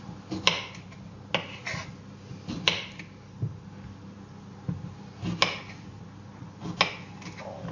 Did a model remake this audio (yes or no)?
no